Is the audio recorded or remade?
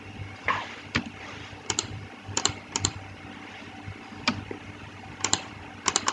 remade